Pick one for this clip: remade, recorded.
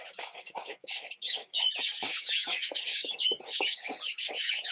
remade